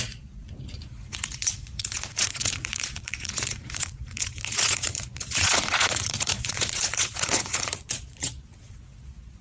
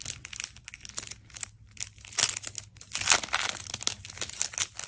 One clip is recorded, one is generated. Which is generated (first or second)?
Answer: first